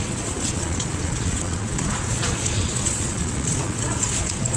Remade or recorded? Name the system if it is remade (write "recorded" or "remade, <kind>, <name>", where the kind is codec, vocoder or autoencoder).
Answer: remade, vocoder, Vocos